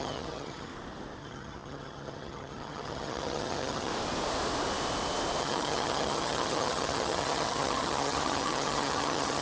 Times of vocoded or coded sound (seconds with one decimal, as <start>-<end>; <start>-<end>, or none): 0.0-0.7; 1.2-3.9; 5.4-9.4